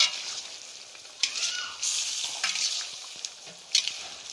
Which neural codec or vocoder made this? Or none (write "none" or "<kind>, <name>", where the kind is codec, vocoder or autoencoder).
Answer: none